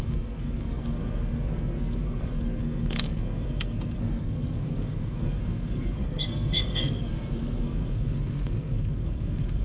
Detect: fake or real fake